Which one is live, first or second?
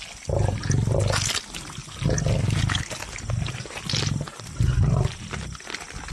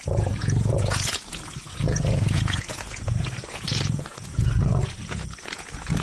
first